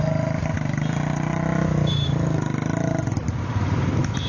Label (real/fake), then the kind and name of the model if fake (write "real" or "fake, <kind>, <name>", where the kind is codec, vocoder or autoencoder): real